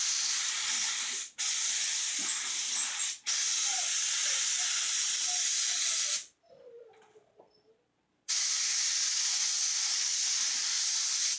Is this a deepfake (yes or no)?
no